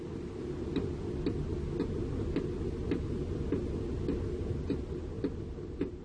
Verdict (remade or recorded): recorded